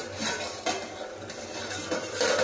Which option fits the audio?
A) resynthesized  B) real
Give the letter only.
B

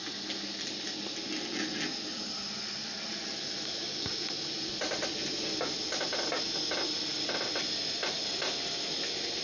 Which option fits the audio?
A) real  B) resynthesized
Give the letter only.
A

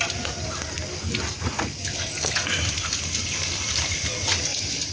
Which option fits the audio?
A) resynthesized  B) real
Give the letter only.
B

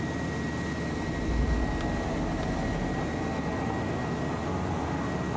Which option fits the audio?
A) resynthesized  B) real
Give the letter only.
B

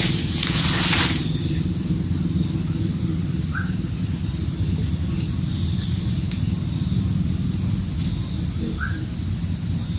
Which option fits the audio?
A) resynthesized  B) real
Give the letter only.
B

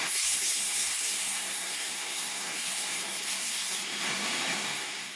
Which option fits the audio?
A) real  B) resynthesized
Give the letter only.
B